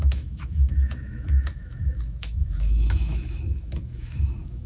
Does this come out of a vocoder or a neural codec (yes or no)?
yes